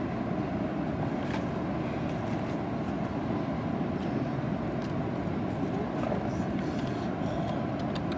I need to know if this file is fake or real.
real